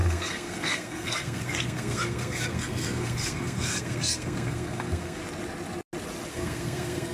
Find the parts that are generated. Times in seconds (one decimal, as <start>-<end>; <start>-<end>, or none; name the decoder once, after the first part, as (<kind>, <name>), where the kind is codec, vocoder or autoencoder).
0.0-5.2 (codec, SNAC); 6.3-7.1